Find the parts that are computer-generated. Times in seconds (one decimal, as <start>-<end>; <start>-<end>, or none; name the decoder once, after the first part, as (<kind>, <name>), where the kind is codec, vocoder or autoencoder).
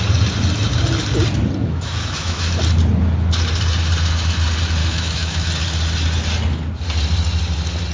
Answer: 1.6-2.5 (autoencoder, DAC-VAE); 4.8-5.5